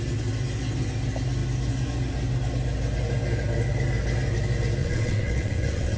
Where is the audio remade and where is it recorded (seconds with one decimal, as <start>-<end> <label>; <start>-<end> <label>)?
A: 0.0-4.8 recorded; 4.8-6.0 remade